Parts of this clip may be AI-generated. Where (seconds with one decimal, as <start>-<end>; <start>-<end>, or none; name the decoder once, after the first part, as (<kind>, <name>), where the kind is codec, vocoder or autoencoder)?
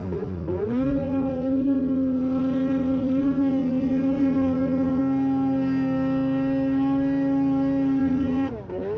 0.0-5.0 (vocoder, Vocos); 8.0-8.5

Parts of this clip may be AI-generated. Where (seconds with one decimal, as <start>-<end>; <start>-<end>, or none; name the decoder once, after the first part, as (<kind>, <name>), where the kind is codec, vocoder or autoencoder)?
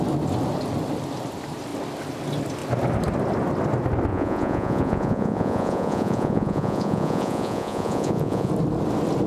4.1-8.5 (vocoder, Vocos)